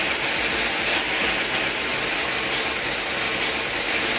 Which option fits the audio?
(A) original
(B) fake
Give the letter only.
A